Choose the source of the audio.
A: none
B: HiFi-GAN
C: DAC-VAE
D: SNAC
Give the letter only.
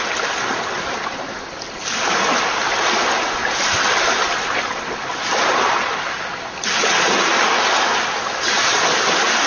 A